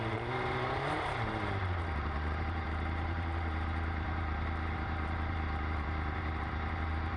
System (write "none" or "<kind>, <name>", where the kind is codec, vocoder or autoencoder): vocoder, BigVGAN v2